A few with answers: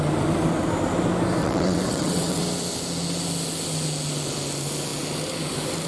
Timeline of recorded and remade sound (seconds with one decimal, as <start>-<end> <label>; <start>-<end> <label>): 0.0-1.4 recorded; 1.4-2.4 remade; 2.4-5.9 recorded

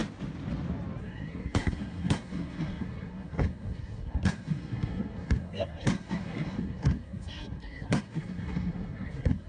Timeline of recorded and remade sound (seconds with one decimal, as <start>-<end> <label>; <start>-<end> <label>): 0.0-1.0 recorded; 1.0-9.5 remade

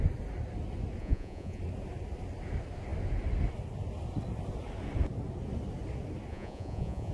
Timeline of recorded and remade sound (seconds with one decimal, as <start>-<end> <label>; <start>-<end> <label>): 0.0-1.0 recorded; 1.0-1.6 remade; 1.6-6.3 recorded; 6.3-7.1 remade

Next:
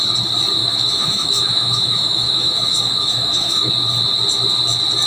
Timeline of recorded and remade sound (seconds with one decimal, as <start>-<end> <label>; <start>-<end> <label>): 0.0-0.6 recorded; 0.6-3.7 remade; 3.7-5.1 recorded